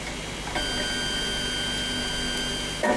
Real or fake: real